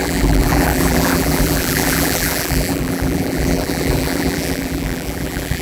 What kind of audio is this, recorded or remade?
remade